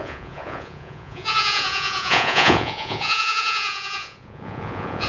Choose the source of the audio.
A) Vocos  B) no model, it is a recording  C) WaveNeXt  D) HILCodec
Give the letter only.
A